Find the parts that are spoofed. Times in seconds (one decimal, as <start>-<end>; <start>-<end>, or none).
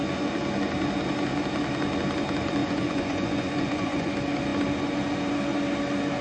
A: 2.6-4.1